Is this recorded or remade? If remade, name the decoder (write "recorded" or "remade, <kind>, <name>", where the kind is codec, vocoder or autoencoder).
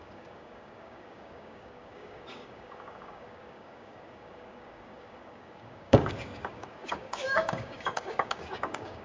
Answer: remade, codec, DAC